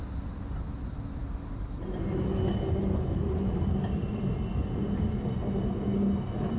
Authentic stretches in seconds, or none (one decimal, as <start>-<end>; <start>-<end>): 0.0-6.6